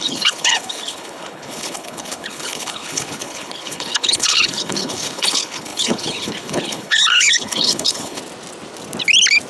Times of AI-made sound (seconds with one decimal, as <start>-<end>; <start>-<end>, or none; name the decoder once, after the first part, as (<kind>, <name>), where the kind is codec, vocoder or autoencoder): 0.0-8.2 (codec, HILCodec)